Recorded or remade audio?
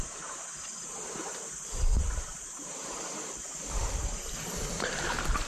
remade